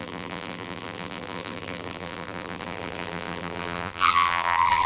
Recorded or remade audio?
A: remade